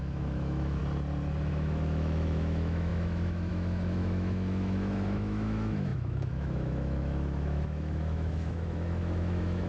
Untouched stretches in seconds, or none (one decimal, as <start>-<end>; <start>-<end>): 0.8-1.5